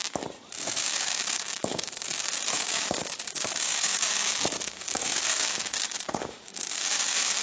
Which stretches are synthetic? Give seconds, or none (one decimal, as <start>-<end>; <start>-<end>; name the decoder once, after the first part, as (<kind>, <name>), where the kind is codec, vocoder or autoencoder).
0.8-7.4 (codec, DAC)

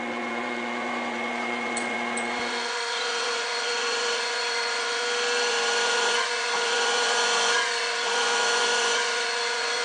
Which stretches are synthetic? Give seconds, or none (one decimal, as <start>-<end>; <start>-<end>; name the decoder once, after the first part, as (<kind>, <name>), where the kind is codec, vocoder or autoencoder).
0.0-5.0 (vocoder, Vocos); 5.5-9.8

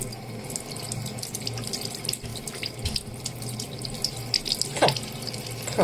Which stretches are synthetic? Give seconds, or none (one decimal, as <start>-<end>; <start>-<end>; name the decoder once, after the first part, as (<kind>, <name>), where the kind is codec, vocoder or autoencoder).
none